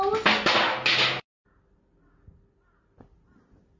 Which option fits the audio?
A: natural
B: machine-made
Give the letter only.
A